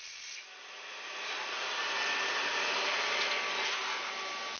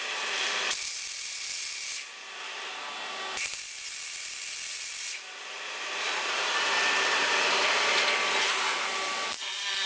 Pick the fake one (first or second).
second